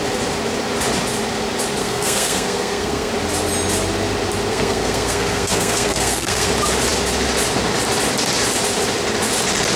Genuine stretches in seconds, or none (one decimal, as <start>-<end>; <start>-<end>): 0.0-1.8; 3.1-4.5; 6.5-9.8